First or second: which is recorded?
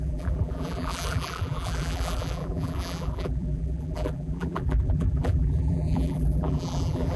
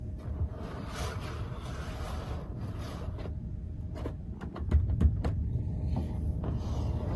second